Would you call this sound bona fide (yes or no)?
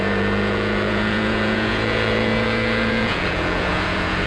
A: no